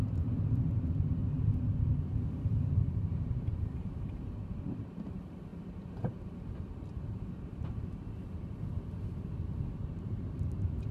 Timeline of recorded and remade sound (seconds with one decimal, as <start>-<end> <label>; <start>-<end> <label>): 0.0-1.2 remade; 1.2-3.0 recorded; 3.0-5.5 remade; 5.5-9.7 recorded; 9.7-10.9 remade